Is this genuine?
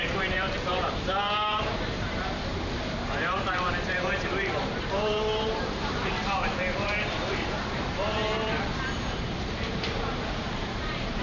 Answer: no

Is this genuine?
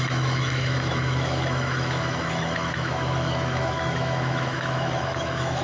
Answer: no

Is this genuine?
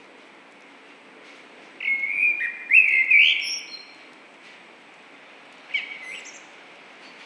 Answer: yes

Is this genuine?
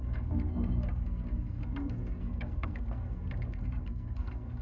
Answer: no